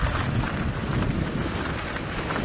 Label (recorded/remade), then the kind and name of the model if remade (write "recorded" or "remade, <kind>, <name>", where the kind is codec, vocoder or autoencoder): recorded